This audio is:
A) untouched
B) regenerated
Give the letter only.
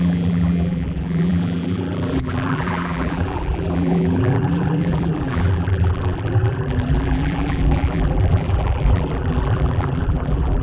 B